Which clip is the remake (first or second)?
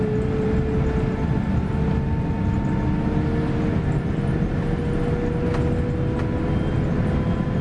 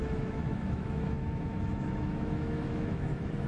second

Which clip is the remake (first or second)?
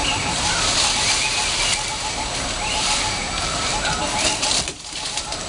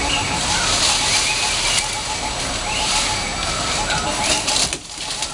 first